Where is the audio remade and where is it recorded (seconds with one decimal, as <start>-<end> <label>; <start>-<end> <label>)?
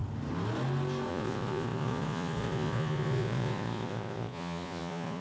0.0-1.1 recorded; 1.1-5.2 remade